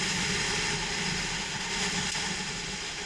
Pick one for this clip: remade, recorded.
recorded